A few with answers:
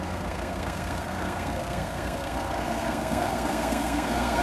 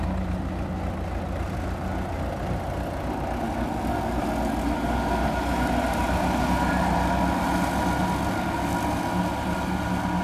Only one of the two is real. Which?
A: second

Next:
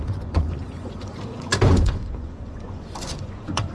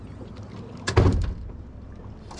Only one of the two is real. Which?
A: second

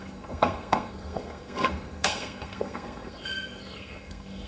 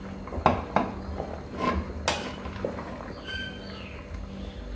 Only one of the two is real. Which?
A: second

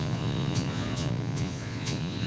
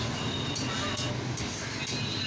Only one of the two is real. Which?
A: second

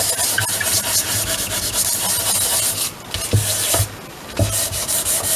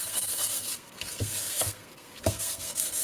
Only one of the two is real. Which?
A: first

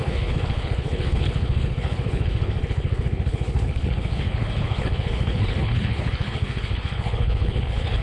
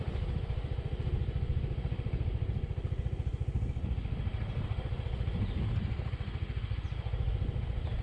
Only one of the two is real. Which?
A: second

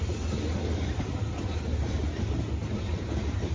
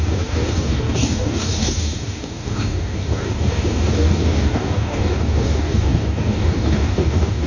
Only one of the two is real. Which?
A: first